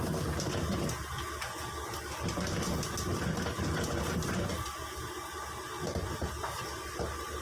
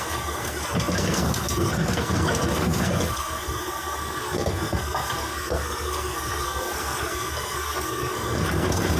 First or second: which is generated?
second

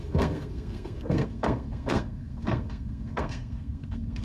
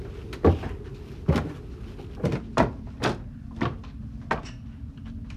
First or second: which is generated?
first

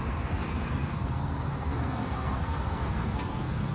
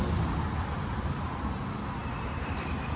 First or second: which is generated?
first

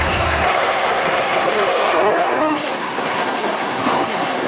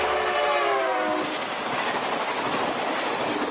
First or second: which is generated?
first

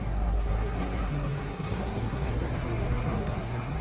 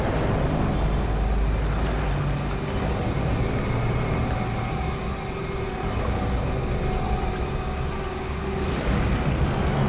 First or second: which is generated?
first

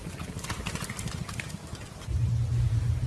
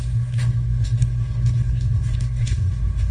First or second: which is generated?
second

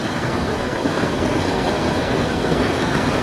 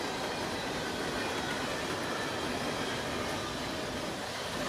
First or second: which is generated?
first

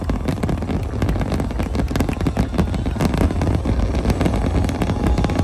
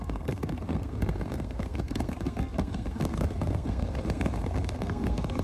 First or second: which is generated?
second